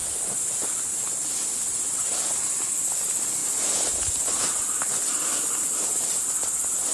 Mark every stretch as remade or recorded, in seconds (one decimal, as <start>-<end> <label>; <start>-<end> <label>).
0.0-3.4 remade; 3.4-4.4 recorded; 4.4-6.9 remade